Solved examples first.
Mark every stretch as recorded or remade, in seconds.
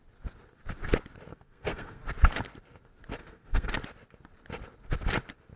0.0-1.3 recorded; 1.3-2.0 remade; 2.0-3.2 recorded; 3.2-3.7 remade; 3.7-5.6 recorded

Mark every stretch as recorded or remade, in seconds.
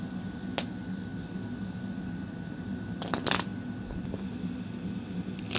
0.0-5.6 recorded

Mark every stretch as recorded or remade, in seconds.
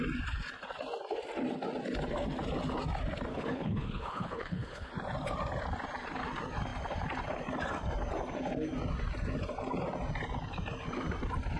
0.0-3.3 recorded; 3.3-4.9 remade; 4.9-11.6 recorded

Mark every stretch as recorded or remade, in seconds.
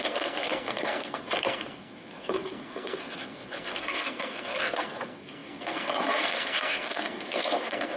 0.0-8.0 remade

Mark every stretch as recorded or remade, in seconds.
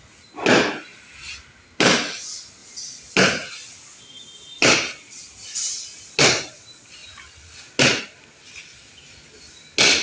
0.0-10.0 recorded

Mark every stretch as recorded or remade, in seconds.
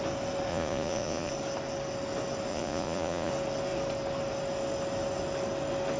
0.0-0.5 recorded; 0.5-1.3 remade; 1.3-2.5 recorded; 2.5-3.3 remade; 3.3-6.0 recorded